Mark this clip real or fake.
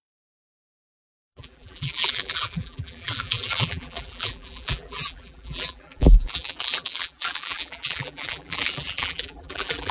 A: fake